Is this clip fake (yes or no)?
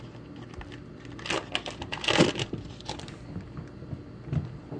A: no